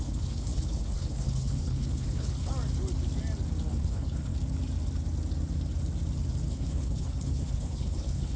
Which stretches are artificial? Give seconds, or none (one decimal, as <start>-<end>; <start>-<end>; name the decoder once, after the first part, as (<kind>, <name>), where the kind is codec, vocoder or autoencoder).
0.0-2.5 (codec, HILCodec); 3.7-4.3; 6.5-8.4

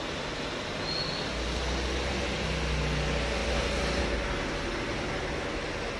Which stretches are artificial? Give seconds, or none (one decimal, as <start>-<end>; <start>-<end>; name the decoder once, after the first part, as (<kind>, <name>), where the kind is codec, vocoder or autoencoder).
none

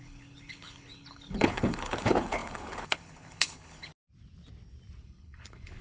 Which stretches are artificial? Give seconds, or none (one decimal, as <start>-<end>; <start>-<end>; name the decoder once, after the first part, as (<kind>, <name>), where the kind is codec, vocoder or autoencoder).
0.0-3.9 (codec, HILCodec); 5.0-5.8

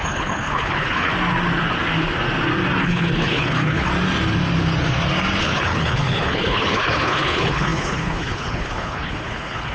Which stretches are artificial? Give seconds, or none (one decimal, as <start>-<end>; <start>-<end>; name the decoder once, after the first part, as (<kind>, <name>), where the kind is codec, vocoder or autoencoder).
0.0-1.1 (codec, HILCodec); 2.8-3.9; 5.4-9.7

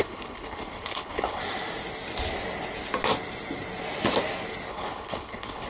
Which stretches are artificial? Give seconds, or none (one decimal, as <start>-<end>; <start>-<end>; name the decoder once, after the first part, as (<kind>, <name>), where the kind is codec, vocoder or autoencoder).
0.0-1.4 (codec, HILCodec); 4.7-5.7